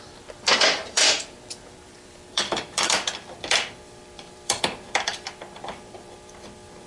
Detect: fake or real fake